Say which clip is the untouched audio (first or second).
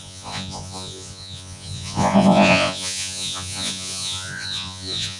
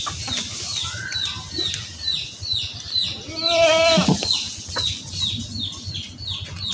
second